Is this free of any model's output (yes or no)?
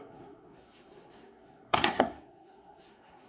no